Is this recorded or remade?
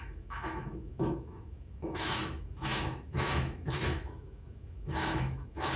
remade